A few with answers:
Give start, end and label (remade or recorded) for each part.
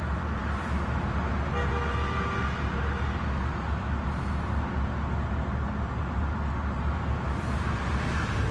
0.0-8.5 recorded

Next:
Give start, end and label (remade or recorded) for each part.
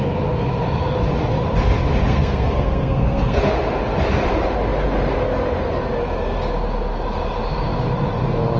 0.0-2.1 recorded; 2.1-3.4 remade; 3.4-8.6 recorded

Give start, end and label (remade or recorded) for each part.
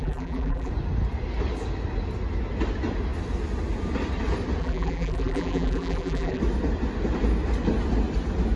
0.0-0.7 remade; 0.7-4.6 recorded; 4.6-6.4 remade; 6.4-8.6 recorded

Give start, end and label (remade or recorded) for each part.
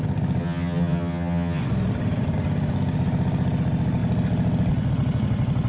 0.0-0.4 recorded; 0.4-1.6 remade; 1.6-5.7 recorded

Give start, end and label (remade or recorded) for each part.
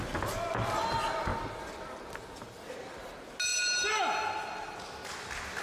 0.0-5.6 recorded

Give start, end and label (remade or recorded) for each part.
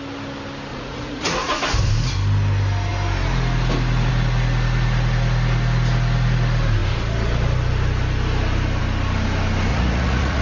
0.0-0.7 recorded; 0.7-1.5 remade; 1.5-9.7 recorded; 9.7-10.4 remade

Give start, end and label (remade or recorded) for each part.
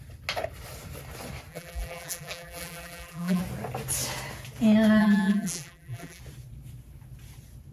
0.0-1.5 recorded; 1.5-3.4 remade; 3.4-5.0 recorded; 5.0-6.2 remade; 6.2-7.7 recorded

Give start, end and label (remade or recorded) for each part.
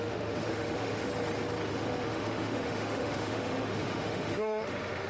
0.0-1.1 remade; 1.1-1.7 recorded; 1.7-5.1 remade